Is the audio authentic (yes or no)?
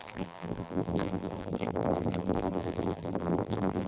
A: no